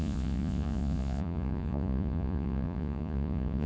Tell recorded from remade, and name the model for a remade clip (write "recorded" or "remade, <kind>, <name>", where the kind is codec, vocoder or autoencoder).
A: remade, vocoder, Vocos